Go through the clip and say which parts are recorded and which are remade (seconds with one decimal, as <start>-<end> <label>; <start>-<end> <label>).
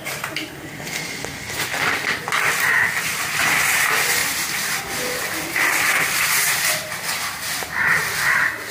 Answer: 0.0-8.7 recorded